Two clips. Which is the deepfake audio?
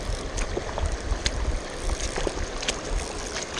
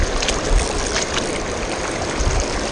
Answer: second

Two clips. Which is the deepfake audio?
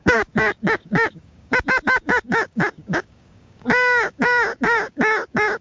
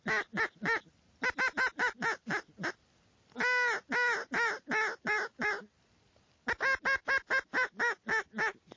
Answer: first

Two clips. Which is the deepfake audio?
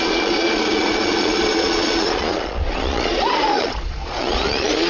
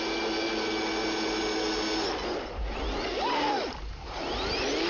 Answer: first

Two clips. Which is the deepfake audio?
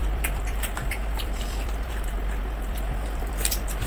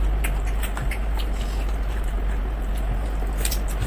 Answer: first